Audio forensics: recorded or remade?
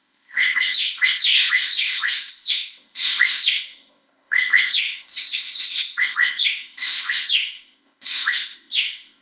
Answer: remade